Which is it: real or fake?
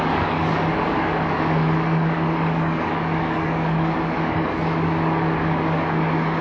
fake